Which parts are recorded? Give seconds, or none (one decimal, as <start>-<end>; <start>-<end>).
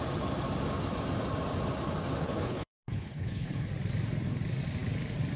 0.0-2.2; 3.7-5.4